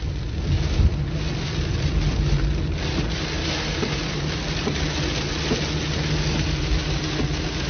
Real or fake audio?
real